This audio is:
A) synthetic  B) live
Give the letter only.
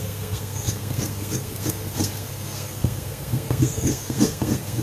A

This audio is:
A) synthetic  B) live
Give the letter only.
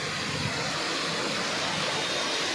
B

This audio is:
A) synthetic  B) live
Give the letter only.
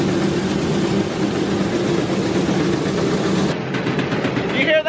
B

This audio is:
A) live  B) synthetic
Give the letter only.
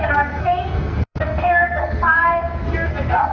B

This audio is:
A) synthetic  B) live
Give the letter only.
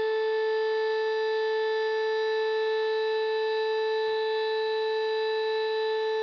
B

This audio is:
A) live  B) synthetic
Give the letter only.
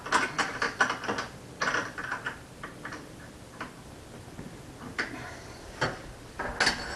A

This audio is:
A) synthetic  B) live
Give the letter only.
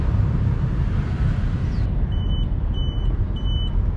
B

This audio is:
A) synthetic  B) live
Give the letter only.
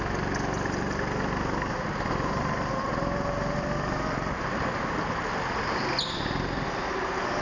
B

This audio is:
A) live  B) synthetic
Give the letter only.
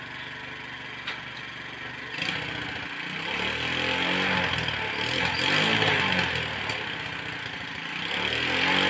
A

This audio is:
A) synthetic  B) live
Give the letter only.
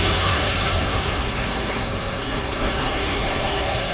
A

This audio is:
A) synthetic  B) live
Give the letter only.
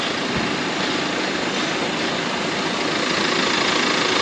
B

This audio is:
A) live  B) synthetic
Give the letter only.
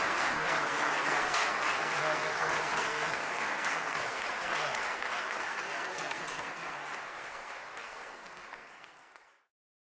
B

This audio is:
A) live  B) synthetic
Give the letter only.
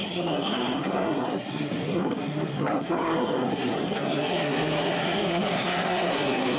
B